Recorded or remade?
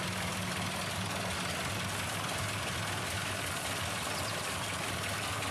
recorded